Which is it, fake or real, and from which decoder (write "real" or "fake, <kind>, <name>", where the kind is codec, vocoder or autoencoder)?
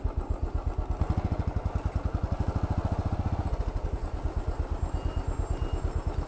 real